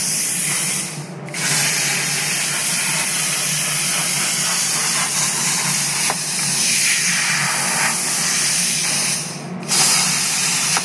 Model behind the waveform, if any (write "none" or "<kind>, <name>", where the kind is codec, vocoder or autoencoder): none